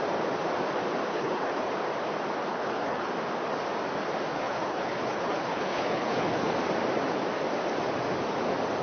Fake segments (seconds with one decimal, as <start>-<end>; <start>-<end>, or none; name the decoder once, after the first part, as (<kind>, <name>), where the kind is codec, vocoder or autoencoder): 1.1-1.7 (codec, HILCodec); 2.5-3.1; 4.3-6.5